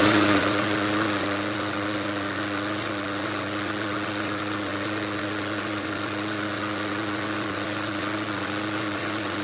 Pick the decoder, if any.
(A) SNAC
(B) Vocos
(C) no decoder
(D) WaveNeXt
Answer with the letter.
D